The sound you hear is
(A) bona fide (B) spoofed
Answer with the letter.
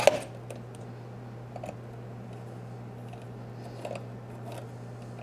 A